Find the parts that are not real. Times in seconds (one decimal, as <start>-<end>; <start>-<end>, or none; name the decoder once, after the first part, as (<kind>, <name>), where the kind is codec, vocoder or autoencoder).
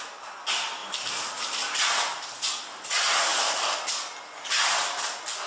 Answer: none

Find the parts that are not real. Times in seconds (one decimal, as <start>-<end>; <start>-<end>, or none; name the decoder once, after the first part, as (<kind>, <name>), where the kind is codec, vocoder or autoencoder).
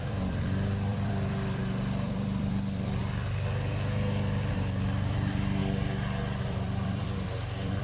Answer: 0.0-3.0 (vocoder, BigVGAN v2); 4.5-5.6; 6.4-7.8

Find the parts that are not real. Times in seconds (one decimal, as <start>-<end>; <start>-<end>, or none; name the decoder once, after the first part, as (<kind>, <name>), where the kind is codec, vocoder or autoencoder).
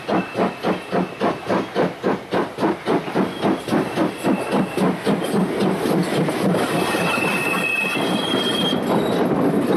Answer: none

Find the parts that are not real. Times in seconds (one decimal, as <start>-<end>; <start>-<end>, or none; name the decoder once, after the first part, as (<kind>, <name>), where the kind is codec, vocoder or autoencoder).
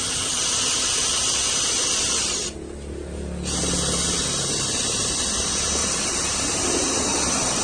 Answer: 5.8-7.6 (vocoder, BigVGAN v2)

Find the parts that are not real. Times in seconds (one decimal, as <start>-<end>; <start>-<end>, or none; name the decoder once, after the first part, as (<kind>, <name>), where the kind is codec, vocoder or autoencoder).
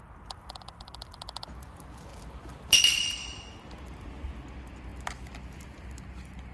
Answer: none